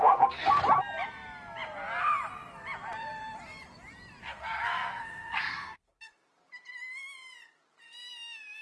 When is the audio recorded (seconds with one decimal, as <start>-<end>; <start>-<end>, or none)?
0.6-4.2; 6.1-8.6